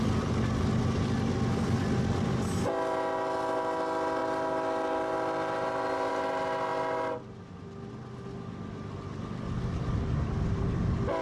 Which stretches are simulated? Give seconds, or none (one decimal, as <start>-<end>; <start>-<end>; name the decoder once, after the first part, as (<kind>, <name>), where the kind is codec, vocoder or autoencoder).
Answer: none